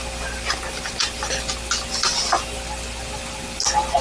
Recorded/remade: recorded